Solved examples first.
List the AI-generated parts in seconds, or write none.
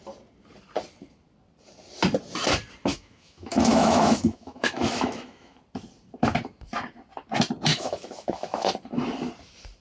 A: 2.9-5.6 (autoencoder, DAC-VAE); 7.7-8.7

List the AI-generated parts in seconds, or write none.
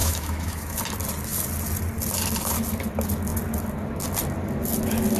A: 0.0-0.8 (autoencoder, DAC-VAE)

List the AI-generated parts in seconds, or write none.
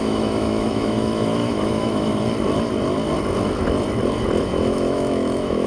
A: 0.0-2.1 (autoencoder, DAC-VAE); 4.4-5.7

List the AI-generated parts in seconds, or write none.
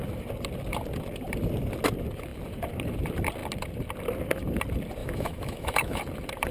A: 5.0-6.0 (autoencoder, DAC-VAE)